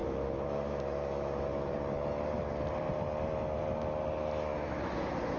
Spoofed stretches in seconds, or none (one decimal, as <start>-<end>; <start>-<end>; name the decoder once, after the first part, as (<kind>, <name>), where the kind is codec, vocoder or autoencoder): 0.0-1.7 (autoencoder, DAC-VAE); 4.5-5.4